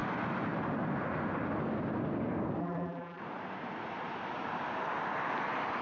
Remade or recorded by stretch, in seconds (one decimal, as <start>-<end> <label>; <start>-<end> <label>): 0.0-2.6 recorded; 2.6-3.2 remade; 3.2-5.8 recorded